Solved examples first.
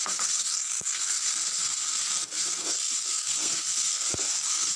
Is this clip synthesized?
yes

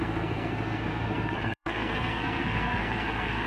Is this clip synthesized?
yes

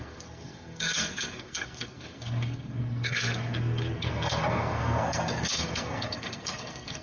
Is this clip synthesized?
yes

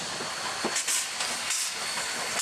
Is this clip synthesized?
no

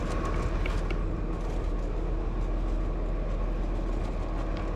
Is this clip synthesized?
no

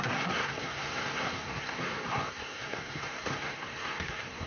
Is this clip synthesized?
yes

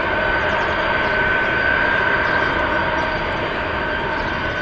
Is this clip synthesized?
no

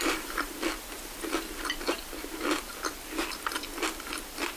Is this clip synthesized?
no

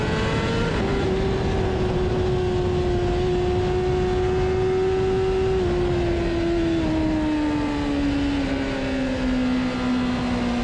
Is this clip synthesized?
no